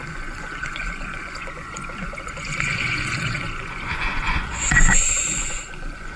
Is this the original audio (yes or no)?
no